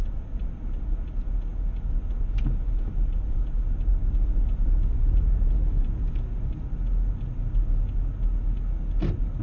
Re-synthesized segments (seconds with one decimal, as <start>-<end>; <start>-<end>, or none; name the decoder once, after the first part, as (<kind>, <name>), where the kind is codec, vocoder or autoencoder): none